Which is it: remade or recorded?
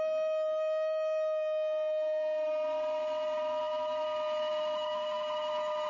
recorded